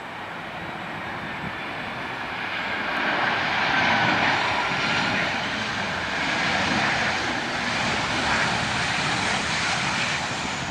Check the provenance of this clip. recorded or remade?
recorded